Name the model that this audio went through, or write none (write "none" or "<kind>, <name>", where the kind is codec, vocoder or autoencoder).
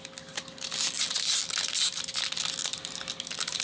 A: none